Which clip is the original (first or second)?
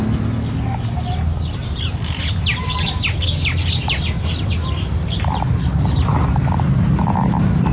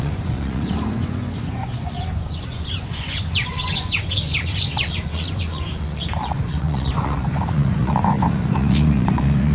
first